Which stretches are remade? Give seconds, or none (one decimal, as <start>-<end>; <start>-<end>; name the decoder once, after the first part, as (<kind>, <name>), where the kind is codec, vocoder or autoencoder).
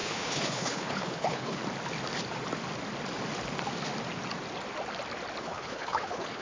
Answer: 0.0-1.6 (codec, HILCodec); 5.4-6.4